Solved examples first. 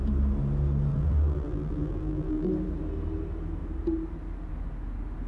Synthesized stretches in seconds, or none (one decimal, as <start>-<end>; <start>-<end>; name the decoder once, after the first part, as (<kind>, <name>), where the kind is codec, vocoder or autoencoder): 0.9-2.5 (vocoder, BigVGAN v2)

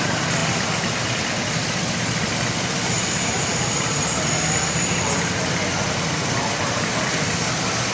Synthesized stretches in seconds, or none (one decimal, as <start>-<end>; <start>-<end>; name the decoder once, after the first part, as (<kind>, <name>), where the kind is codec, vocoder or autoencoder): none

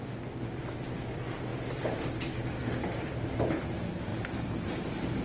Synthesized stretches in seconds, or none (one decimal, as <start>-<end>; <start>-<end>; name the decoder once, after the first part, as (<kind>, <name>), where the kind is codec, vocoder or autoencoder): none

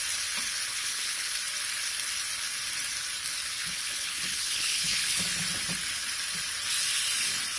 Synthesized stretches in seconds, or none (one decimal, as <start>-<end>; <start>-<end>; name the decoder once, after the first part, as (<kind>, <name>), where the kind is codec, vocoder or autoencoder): 0.7-1.3 (codec, HILCodec); 3.6-5.2